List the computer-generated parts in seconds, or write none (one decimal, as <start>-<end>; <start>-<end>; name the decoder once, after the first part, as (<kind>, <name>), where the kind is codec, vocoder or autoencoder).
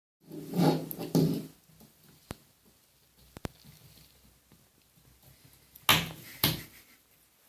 5.9-6.6 (vocoder, BigVGAN v2)